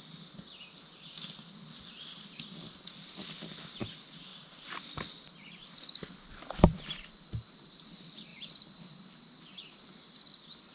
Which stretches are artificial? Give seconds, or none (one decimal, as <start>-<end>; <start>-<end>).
4.3-6.3; 6.7-7.3; 8.3-9.1